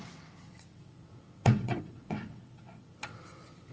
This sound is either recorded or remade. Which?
remade